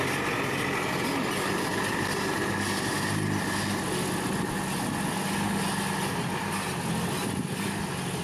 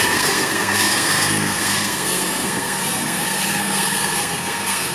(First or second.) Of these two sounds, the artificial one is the second